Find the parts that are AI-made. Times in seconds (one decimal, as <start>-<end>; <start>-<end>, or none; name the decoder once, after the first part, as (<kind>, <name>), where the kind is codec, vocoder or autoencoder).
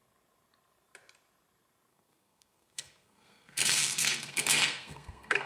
1.9-5.5 (codec, SNAC)